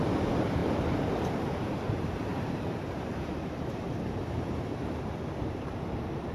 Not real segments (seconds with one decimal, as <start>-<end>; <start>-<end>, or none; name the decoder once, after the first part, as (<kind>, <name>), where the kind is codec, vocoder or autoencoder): 0.6-1.6 (vocoder, BigVGAN v2); 2.3-6.3